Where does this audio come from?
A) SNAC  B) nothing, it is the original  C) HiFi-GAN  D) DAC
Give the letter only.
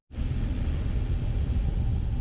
B